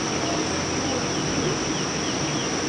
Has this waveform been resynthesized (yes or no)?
no